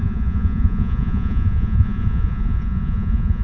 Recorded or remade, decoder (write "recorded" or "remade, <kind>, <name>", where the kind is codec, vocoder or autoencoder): remade, vocoder, Vocos